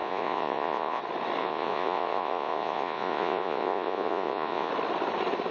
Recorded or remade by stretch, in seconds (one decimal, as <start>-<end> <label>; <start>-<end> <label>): 0.0-1.0 remade; 1.0-1.4 recorded; 1.4-4.7 remade; 4.7-5.5 recorded

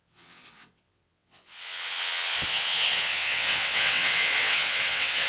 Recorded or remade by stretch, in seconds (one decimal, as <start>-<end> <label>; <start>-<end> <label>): 0.0-5.3 remade

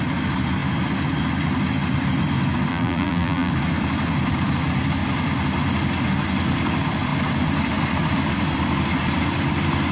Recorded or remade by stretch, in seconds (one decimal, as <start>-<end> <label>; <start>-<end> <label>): 0.0-2.7 recorded; 2.7-3.5 remade; 3.5-9.9 recorded

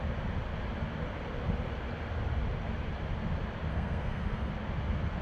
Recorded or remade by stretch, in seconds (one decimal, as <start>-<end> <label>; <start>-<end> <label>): 0.0-3.7 recorded; 3.7-4.5 remade; 4.5-5.2 recorded

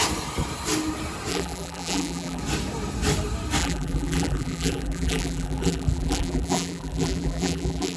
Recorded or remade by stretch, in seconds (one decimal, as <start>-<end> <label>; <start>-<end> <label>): 0.0-1.3 recorded; 1.3-2.4 remade; 2.4-3.6 recorded; 3.6-8.0 remade

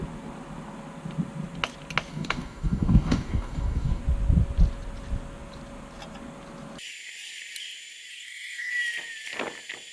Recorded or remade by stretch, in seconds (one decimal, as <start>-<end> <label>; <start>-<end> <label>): 0.0-2.1 recorded; 2.1-4.0 remade; 4.0-8.1 recorded; 8.1-8.7 remade; 8.7-9.9 recorded

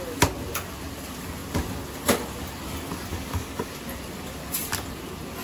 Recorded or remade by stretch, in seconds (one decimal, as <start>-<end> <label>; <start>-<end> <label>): 0.0-3.1 recorded; 3.1-3.7 remade; 3.7-5.4 recorded

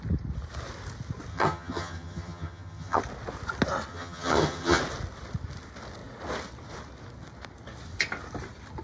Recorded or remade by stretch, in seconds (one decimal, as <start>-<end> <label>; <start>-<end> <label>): 0.0-1.3 recorded; 1.3-3.0 remade; 3.0-3.9 recorded; 3.9-4.8 remade; 4.8-8.8 recorded